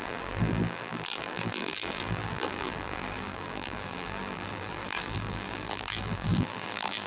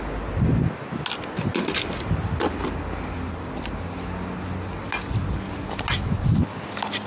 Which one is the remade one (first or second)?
first